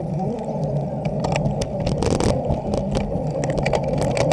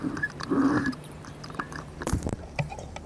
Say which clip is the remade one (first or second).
second